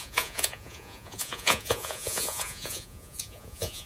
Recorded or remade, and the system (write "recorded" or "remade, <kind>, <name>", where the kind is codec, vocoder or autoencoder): remade, vocoder, Vocos